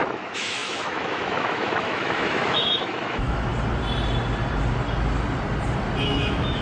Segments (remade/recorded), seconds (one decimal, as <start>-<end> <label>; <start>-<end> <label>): 0.0-3.5 remade; 3.5-6.0 recorded; 6.0-6.6 remade